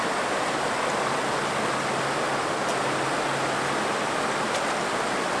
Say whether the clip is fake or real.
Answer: real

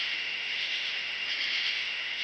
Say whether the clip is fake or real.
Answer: fake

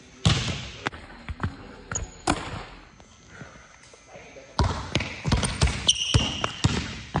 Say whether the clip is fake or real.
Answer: real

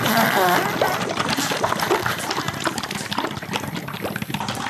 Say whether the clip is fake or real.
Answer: real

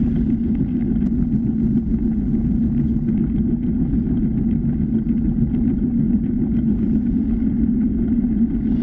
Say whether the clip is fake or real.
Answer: real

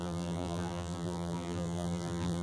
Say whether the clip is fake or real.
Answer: fake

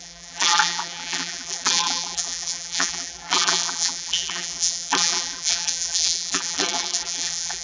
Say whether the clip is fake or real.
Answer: fake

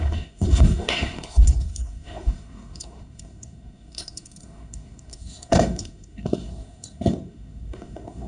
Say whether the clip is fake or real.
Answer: fake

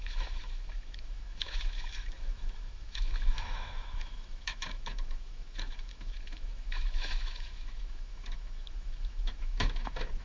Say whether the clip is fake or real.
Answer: fake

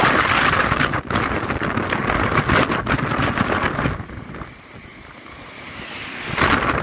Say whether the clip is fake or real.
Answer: real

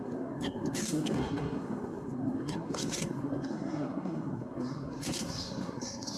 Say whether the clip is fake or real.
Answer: fake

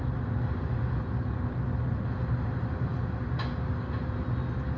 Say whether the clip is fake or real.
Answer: real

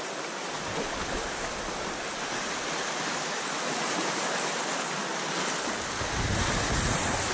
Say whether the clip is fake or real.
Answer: real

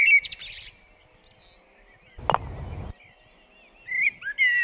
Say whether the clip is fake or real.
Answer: real